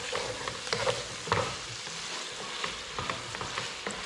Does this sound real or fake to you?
real